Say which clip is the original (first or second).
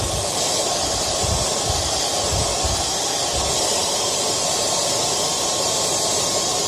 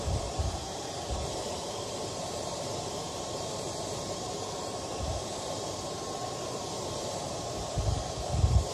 first